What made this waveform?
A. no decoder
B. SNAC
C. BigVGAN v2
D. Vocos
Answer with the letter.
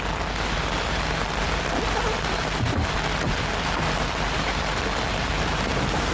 A